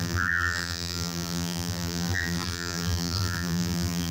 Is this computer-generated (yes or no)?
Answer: yes